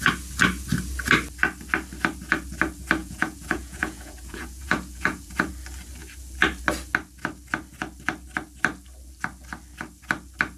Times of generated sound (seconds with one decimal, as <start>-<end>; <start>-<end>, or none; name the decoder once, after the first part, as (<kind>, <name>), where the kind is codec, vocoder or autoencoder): 3.0-5.5 (vocoder, Vocos)